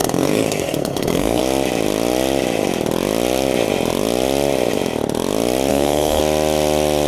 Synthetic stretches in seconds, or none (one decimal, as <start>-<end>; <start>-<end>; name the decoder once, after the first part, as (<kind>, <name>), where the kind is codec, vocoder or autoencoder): 0.0-1.4 (codec, SNAC); 5.7-6.2